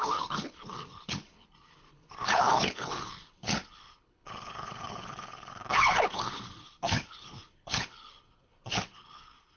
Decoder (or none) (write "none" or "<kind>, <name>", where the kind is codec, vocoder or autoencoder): codec, HILCodec